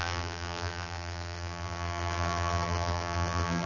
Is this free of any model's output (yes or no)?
no